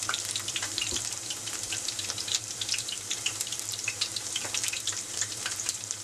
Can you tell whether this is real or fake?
fake